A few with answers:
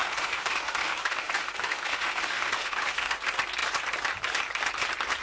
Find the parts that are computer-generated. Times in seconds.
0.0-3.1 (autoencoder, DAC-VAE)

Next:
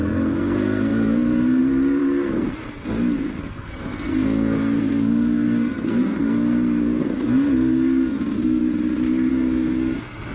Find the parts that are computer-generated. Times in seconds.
0.0-8.6 (codec, SNAC); 9.3-10.3

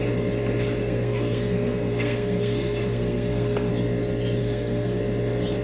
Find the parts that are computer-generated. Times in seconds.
0.8-3.7 (codec, SNAC); 4.4-5.0